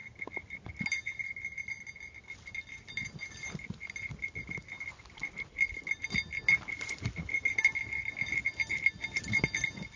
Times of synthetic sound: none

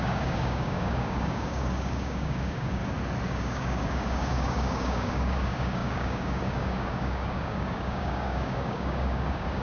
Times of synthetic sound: 0.0-2.8 (codec, DAC); 3.3-9.6